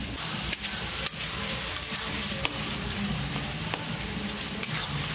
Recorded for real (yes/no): yes